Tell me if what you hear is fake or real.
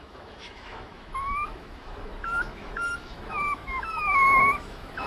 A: fake